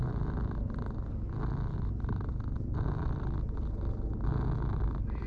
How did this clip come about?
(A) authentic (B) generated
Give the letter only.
A